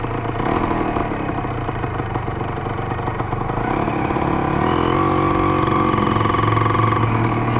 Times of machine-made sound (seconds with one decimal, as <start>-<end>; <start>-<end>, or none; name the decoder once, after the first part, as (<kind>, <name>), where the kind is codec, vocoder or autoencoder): 1.0-2.6 (vocoder, BigVGAN v2)